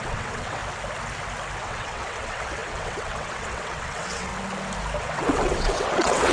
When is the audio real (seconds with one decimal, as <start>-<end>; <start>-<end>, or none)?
0.6-1.6; 4.3-5.0